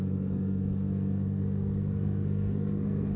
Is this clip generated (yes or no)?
yes